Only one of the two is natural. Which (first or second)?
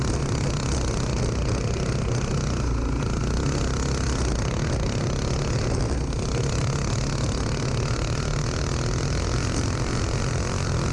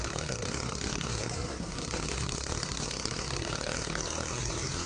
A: first